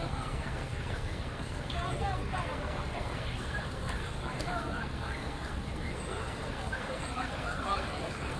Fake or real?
fake